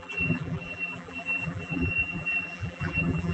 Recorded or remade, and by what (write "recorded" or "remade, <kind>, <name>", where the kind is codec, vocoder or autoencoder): remade, vocoder, BigVGAN v2